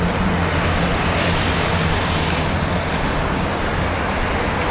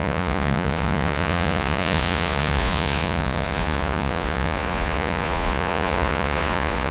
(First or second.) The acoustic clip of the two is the first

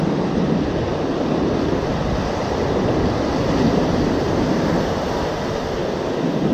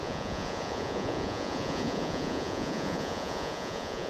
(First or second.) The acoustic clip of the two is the first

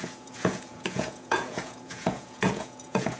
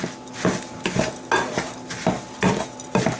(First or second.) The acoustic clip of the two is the second